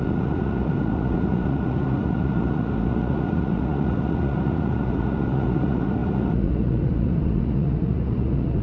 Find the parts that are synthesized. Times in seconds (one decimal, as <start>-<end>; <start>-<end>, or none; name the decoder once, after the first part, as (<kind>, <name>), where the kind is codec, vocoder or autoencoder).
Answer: 0.0-8.6 (vocoder, Vocos)